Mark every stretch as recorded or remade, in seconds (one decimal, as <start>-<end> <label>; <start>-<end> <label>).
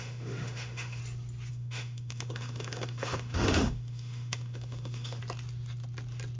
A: 0.0-1.0 remade; 1.0-1.5 recorded; 1.5-5.2 remade; 5.2-6.4 recorded